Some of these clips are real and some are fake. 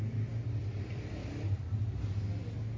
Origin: real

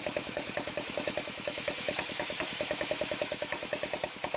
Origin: fake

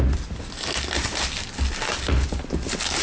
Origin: real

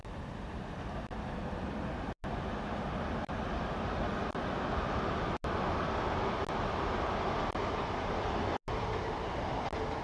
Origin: real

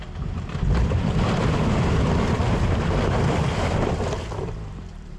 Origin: fake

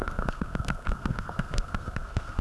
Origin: fake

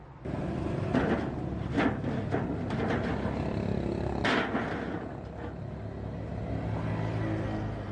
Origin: real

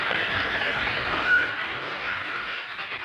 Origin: fake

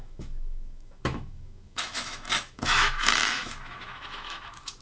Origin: fake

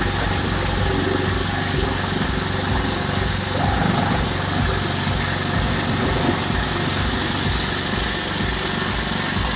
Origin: real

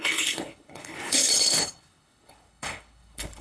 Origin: fake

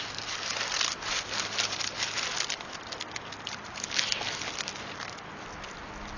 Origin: real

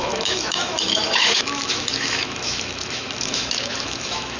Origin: fake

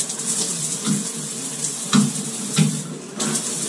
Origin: real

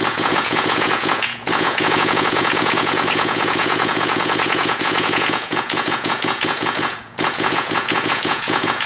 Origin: fake